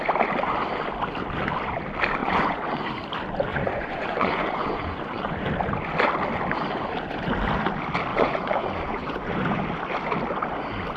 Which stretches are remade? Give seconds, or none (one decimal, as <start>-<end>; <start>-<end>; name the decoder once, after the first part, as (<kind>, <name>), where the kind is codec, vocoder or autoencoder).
2.2-2.8 (vocoder, Vocos); 3.5-5.3; 8.1-9.6